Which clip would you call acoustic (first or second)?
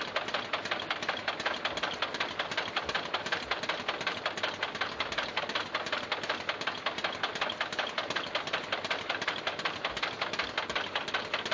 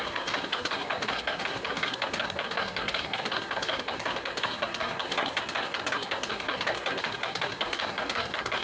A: first